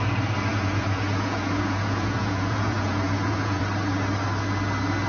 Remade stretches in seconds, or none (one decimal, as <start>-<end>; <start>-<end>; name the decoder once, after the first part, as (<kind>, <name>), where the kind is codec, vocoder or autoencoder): 0.5-3.6 (vocoder, Vocos)